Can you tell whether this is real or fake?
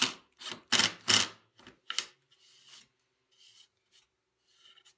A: real